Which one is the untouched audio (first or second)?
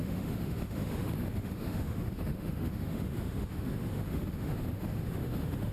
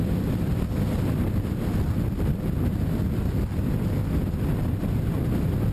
second